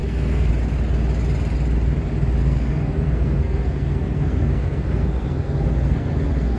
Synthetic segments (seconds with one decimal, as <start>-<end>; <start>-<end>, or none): 0.0-0.5; 2.4-6.6